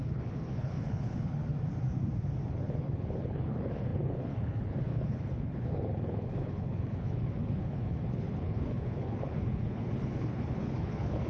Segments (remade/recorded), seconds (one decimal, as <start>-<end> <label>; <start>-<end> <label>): 0.0-1.4 remade; 1.4-2.5 recorded; 2.5-11.3 remade